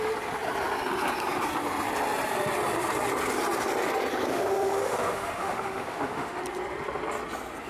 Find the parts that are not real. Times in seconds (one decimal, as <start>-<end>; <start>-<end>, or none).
4.3-6.4